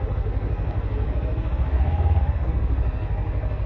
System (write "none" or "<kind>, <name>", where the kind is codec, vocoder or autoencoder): codec, SNAC